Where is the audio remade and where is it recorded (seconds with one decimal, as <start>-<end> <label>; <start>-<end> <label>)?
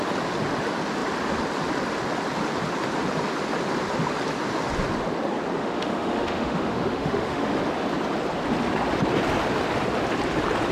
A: 0.0-5.6 recorded; 5.6-7.6 remade; 7.6-10.7 recorded